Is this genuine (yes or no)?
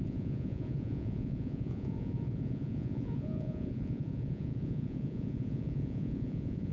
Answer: no